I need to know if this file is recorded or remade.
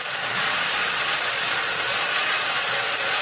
remade